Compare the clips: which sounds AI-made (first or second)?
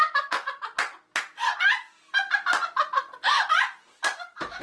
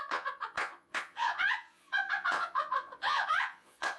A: second